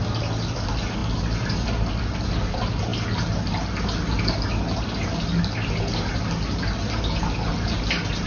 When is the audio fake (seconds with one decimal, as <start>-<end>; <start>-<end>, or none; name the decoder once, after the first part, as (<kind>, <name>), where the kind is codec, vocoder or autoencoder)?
none